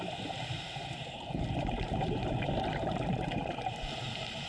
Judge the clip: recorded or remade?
remade